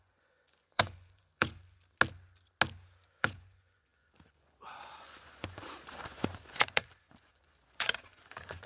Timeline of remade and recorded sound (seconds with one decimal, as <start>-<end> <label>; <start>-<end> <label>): 0.0-1.8 remade; 1.8-3.1 recorded; 3.1-8.7 remade